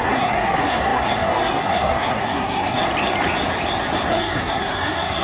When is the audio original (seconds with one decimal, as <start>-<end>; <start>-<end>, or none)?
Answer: 2.8-4.1